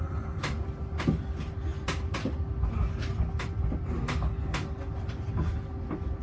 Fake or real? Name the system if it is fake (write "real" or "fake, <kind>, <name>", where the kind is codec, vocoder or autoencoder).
real